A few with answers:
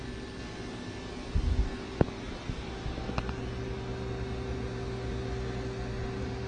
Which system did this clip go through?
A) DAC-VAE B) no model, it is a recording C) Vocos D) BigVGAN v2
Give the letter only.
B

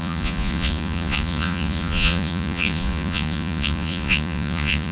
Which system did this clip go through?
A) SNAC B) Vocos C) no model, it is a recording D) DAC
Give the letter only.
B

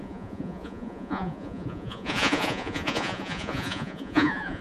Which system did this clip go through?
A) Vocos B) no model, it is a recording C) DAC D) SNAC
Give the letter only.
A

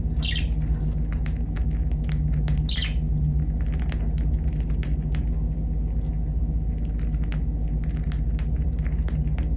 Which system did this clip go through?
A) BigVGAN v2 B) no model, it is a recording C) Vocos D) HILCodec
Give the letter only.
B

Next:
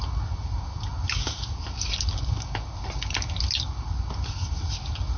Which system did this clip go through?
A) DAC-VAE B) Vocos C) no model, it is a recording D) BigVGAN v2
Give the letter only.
C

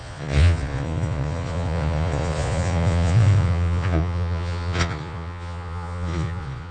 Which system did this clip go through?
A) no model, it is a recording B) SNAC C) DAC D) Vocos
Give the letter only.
D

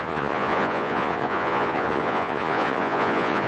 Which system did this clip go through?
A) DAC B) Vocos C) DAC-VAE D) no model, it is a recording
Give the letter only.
B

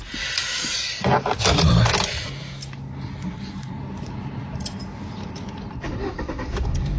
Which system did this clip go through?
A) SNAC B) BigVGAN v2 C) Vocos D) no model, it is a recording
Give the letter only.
D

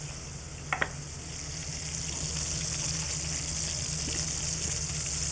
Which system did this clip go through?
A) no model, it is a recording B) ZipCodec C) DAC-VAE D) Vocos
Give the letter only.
A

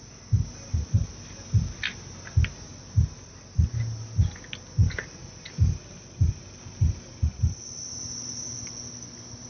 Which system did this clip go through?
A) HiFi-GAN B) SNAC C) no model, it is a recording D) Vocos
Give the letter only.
C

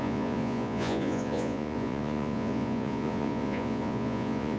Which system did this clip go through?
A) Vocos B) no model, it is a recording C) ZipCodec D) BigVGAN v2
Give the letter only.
A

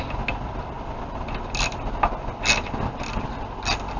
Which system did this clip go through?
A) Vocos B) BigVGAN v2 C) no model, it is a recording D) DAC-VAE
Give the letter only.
C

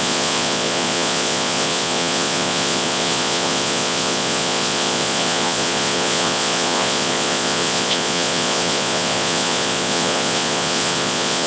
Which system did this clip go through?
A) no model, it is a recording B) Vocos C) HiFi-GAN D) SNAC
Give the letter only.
B